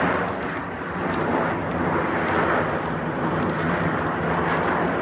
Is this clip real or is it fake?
real